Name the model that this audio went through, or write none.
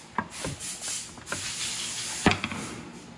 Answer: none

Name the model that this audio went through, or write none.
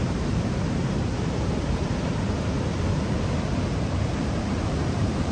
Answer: vocoder, BigVGAN v2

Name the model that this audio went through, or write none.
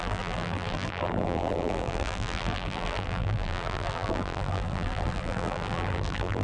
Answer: vocoder, BigVGAN v2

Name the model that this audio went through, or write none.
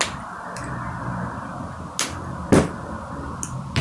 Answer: none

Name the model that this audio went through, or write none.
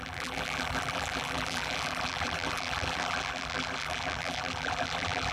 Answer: vocoder, BigVGAN v2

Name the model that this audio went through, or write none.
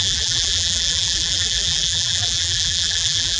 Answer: vocoder, BigVGAN v2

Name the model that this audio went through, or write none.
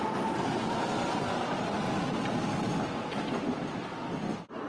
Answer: none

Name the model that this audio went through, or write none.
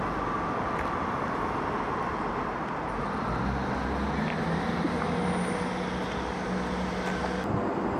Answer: none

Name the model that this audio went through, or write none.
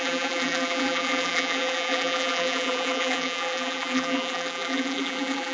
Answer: vocoder, BigVGAN v2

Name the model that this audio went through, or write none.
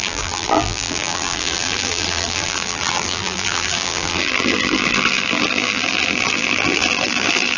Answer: vocoder, BigVGAN v2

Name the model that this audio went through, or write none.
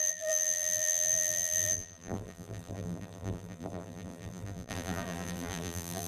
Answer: vocoder, BigVGAN v2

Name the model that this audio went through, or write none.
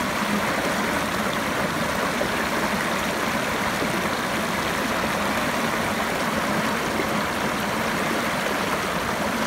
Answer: none